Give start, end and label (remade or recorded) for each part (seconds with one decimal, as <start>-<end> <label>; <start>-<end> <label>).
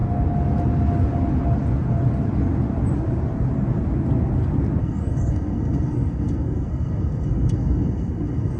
0.0-4.8 recorded; 4.8-8.6 remade